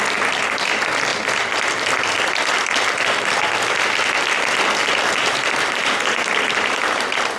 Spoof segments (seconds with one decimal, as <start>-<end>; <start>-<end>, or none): 4.8-7.4